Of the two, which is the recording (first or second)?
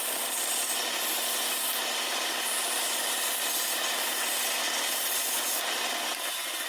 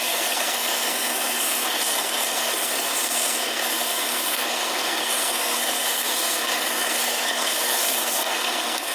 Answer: first